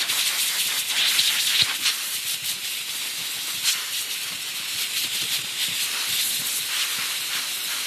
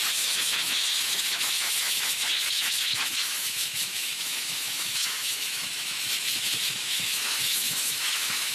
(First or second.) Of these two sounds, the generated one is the second